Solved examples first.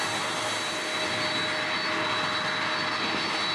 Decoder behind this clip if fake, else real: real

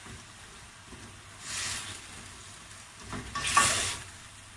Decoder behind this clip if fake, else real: real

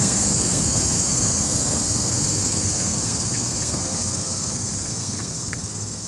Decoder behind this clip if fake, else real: fake, codec, SNAC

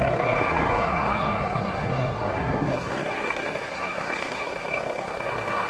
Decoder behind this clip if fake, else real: fake, codec, SNAC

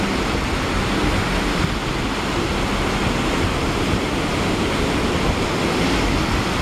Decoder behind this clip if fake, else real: real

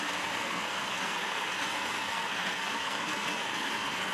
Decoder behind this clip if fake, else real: fake, codec, SNAC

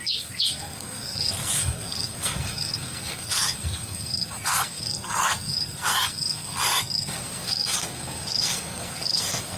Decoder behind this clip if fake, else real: fake, codec, SNAC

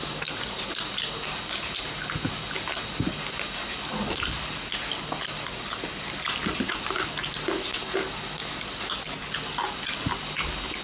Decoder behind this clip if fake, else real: real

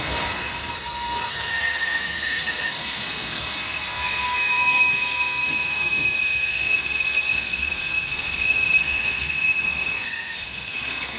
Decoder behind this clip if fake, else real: fake, codec, SNAC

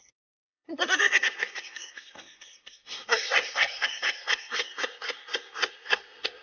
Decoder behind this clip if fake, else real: fake, codec, SNAC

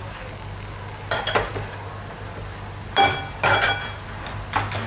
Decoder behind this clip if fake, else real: real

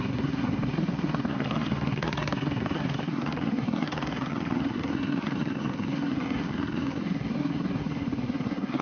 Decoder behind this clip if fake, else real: fake, codec, SNAC